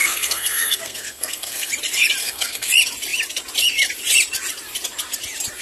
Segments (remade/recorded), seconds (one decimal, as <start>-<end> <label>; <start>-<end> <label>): 0.0-1.7 remade; 1.7-2.2 recorded; 2.2-2.7 remade; 2.7-5.6 recorded